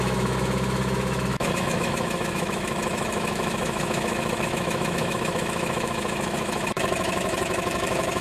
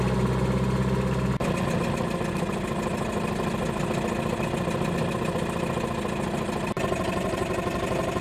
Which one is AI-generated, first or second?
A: first